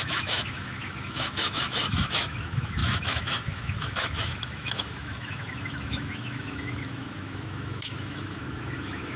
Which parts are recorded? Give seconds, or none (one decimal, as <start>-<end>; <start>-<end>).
none